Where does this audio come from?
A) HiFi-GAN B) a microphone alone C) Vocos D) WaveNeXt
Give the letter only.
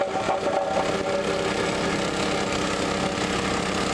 B